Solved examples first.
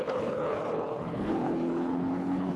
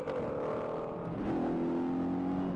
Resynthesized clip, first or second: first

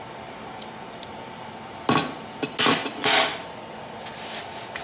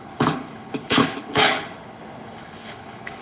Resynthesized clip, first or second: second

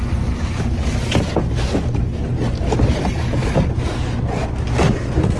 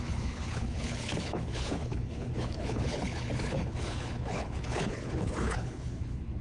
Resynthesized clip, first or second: second